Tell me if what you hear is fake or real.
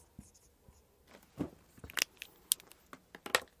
real